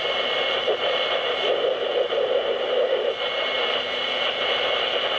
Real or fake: real